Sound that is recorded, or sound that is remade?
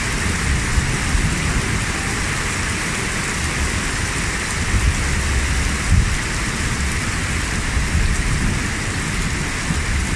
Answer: recorded